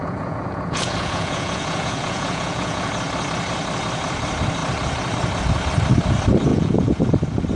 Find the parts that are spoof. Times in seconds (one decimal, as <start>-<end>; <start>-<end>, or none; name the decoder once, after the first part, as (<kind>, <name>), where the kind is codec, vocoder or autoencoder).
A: 0.0-2.9 (vocoder, Vocos); 6.5-7.1